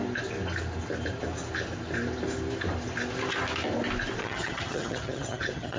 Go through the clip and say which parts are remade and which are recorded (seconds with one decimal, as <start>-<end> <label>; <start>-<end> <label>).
0.0-4.2 recorded; 4.2-5.8 remade